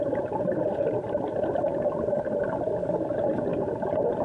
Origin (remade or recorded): recorded